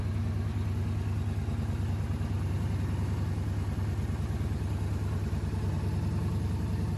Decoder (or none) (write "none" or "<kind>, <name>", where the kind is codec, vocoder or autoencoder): none